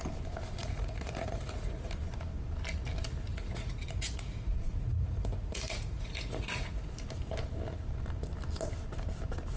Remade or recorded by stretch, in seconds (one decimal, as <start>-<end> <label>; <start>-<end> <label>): 0.0-0.6 recorded; 0.6-1.9 remade; 1.9-3.3 recorded; 3.3-6.9 remade; 6.9-9.6 recorded

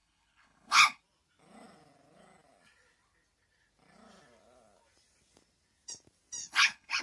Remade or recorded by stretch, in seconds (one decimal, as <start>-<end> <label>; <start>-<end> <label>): 0.0-1.0 remade; 1.0-6.4 recorded; 6.4-7.0 remade

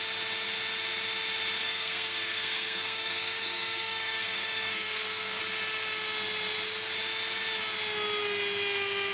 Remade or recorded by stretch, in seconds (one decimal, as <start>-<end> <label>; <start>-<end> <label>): 0.0-1.6 recorded; 1.6-5.4 remade; 5.4-9.1 recorded

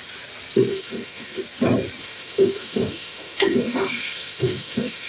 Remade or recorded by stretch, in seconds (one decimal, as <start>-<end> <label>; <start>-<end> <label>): 0.0-0.7 recorded; 0.7-1.4 remade; 1.4-2.0 recorded; 2.0-5.1 remade

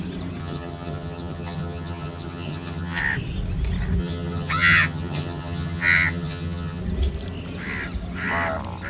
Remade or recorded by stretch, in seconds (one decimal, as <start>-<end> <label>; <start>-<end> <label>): 0.0-0.4 recorded; 0.4-3.0 remade; 3.0-4.0 recorded; 4.0-6.8 remade; 6.8-8.9 recorded

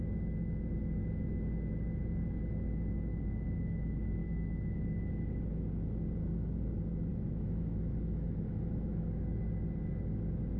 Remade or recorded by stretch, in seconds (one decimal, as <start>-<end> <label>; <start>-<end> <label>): 0.0-4.2 recorded; 4.2-4.8 remade; 4.8-7.1 recorded; 7.1-9.4 remade; 9.4-10.6 recorded

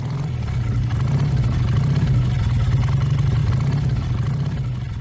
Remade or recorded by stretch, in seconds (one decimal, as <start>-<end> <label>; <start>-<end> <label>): 0.0-5.0 recorded